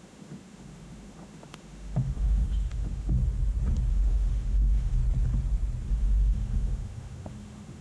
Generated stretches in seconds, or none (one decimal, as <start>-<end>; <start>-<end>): 0.0-3.2; 3.9-5.0; 5.9-7.8